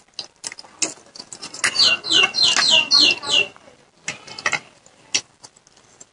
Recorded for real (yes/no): yes